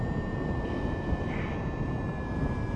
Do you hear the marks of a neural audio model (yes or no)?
no